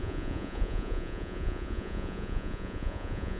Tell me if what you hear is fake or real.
fake